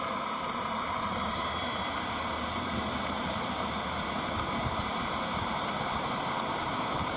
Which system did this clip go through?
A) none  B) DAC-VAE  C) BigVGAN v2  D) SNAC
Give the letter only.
C